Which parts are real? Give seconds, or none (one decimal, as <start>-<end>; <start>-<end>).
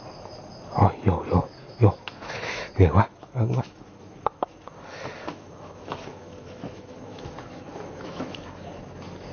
0.0-1.4; 4.5-5.3; 8.7-9.3